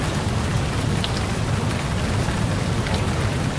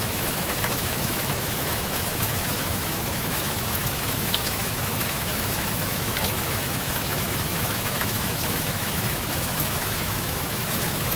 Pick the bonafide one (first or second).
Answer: first